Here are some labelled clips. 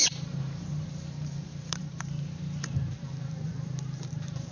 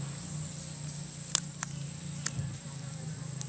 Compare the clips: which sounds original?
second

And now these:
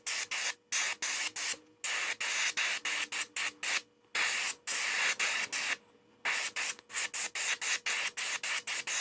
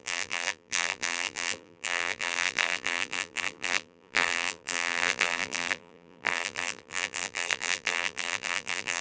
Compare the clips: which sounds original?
first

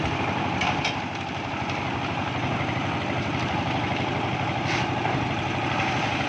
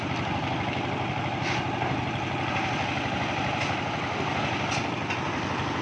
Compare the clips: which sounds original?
second